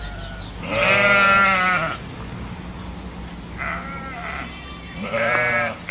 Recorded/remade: recorded